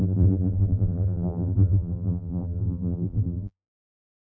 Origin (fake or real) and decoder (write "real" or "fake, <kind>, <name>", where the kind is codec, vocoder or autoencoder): fake, vocoder, BigVGAN v2